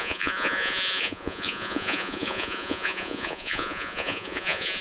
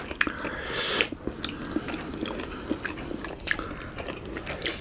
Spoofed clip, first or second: first